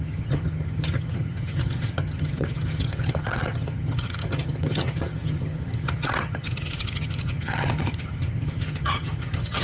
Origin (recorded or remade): remade